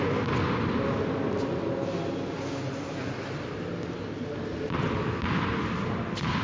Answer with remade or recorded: recorded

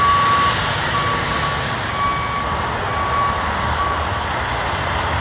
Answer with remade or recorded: recorded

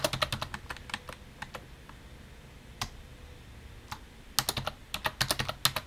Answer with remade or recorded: recorded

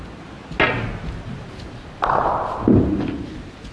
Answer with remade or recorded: recorded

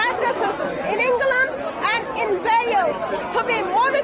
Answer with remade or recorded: recorded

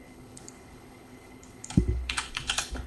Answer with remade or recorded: remade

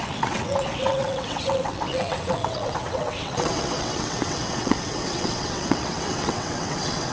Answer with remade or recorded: remade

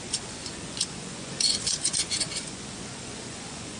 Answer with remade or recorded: remade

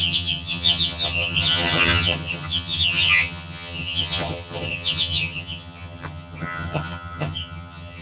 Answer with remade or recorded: remade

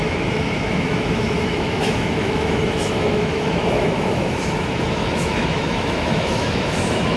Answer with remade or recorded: remade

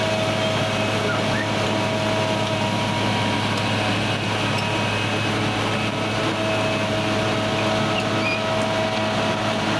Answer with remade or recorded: recorded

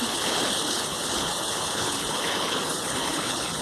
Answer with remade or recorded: remade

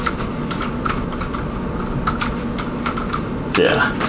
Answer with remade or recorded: recorded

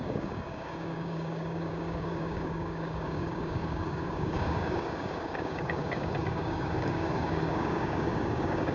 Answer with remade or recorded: remade